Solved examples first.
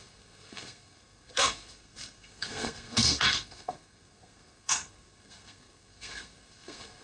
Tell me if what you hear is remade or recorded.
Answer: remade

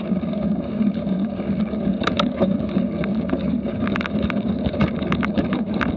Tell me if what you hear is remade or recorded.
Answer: remade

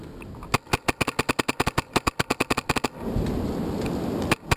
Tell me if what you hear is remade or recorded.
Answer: recorded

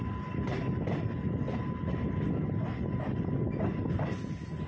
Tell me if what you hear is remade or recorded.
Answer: recorded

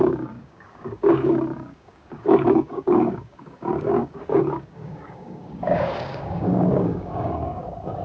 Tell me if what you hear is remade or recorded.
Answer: remade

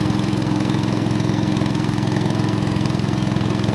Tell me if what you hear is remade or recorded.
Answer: remade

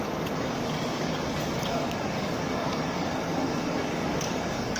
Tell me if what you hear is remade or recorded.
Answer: remade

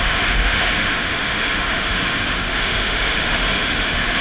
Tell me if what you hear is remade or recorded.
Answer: remade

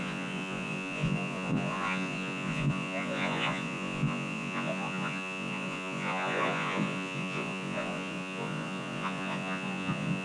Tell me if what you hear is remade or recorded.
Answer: remade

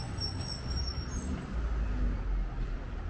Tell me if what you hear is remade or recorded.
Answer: recorded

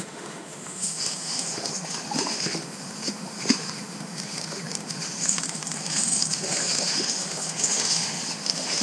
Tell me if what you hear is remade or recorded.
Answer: remade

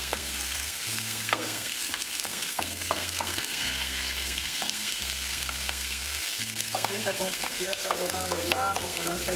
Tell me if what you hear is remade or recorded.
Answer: remade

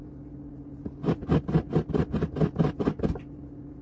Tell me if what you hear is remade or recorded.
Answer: recorded